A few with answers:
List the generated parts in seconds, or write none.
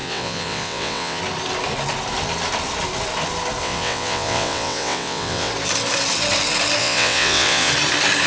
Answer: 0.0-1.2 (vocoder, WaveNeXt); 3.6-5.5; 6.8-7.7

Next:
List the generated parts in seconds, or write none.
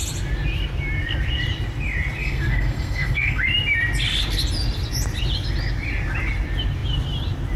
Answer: 2.2-3.4 (codec, SNAC)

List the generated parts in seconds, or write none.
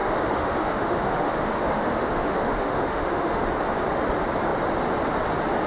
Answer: 0.0-3.4 (autoencoder, DAC-VAE)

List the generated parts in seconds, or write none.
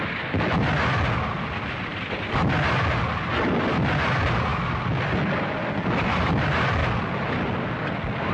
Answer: none